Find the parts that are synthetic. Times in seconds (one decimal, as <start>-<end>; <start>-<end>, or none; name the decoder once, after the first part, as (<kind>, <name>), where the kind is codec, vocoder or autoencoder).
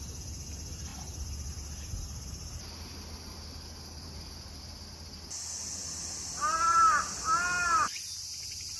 none